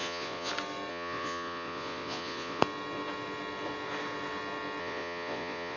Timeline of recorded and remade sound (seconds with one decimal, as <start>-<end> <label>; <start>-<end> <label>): 0.0-0.5 remade; 0.5-0.9 recorded; 0.9-2.6 remade; 2.6-4.8 recorded; 4.8-5.8 remade